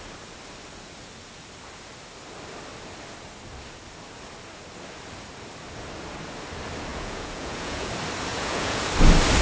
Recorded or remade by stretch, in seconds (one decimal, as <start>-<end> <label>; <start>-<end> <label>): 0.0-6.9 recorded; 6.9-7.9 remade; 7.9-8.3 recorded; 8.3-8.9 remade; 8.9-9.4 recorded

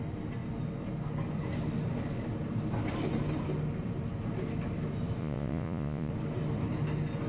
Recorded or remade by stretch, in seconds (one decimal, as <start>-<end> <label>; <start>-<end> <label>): 0.0-5.2 recorded; 5.2-6.1 remade; 6.1-7.3 recorded

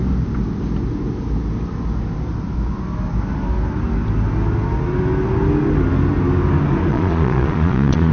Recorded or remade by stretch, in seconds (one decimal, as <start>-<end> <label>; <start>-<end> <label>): 0.0-6.9 recorded; 6.9-8.1 remade

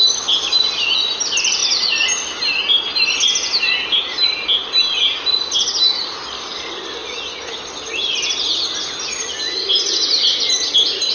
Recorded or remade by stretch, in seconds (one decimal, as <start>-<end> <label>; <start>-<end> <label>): 0.0-11.1 recorded

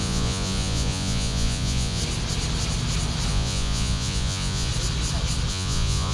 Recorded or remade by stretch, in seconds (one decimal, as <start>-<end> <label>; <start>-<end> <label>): 0.0-2.0 remade; 2.0-3.3 recorded; 3.3-4.7 remade; 4.7-5.5 recorded; 5.5-6.1 remade

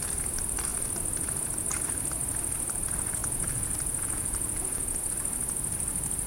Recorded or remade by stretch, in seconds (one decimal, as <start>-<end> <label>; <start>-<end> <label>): 0.0-3.2 recorded; 3.2-5.1 remade; 5.1-6.3 recorded